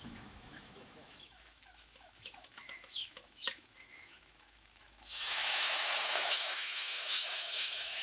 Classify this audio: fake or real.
fake